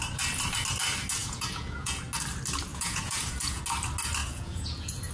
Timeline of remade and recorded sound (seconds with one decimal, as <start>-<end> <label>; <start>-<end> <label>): 0.0-1.2 recorded; 1.2-2.0 remade; 2.0-2.7 recorded; 2.7-3.6 remade; 3.6-4.2 recorded; 4.2-5.1 remade